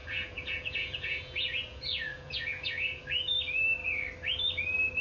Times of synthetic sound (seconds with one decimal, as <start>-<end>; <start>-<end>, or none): 0.0-3.0